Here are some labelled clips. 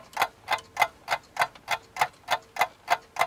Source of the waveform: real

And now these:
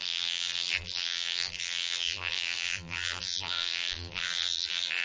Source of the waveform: fake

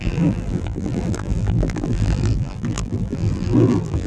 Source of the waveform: fake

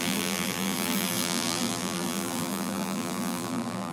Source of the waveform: fake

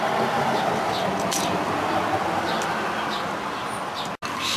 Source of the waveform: real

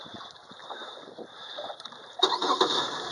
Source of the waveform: fake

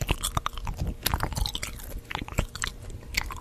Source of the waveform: real